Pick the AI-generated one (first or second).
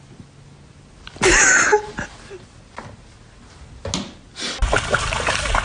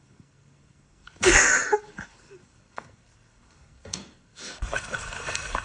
second